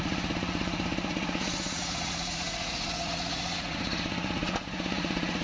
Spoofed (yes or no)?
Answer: yes